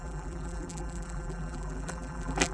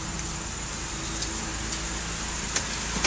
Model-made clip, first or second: first